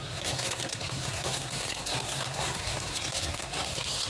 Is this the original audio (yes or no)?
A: no